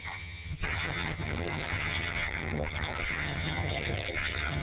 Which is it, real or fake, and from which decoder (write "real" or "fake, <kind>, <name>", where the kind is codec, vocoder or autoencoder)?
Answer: fake, vocoder, HiFi-GAN